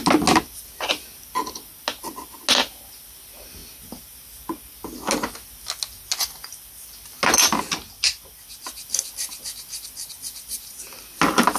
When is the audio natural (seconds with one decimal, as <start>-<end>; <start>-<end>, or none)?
0.0-11.6